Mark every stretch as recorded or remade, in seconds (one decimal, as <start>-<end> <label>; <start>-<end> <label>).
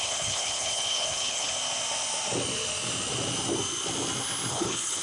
0.0-1.5 remade; 1.5-4.5 recorded; 4.5-5.0 remade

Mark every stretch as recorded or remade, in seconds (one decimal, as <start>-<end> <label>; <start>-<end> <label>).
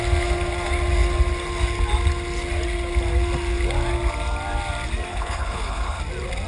0.0-5.1 recorded; 5.1-6.0 remade; 6.0-6.5 recorded